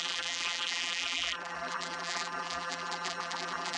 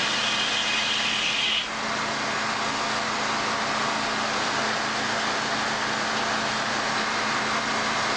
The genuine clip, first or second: second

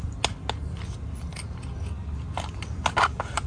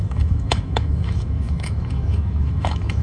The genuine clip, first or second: first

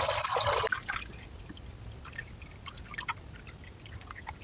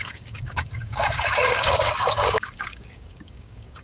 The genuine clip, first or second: first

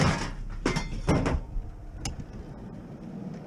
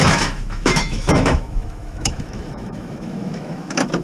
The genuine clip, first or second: first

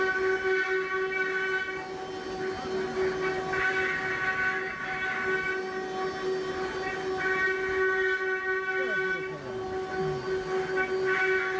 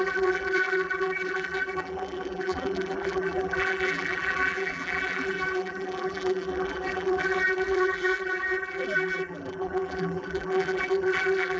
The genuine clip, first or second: first